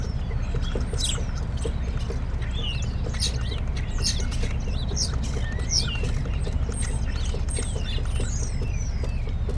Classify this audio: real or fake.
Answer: real